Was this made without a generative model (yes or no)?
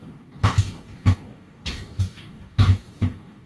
no